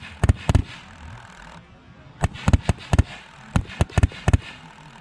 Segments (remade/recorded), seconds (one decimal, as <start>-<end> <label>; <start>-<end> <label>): 0.0-5.0 recorded